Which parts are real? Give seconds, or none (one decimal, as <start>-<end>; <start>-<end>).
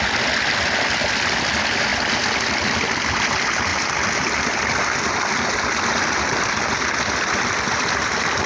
0.0-8.5